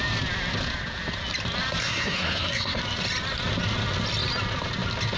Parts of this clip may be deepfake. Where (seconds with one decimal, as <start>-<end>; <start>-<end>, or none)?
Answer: 1.8-2.8